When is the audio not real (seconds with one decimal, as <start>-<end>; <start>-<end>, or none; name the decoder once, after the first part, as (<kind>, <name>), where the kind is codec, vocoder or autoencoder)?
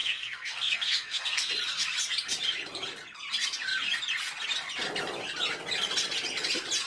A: 0.0-1.5 (codec, SNAC)